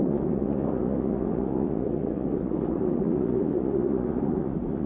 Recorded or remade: remade